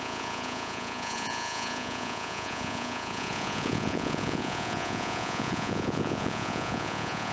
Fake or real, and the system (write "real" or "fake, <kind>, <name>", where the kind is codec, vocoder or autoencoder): fake, vocoder, Vocos